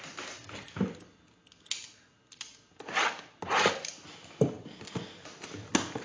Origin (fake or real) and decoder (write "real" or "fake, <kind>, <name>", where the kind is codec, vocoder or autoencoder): real